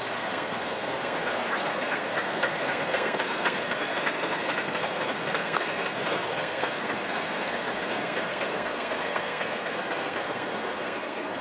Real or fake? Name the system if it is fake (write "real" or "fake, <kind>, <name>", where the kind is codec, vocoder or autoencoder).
fake, codec, SNAC